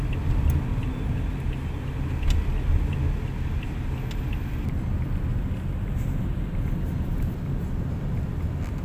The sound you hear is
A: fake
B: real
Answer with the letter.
B